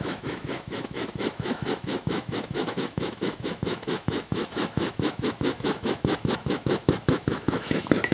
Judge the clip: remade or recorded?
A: remade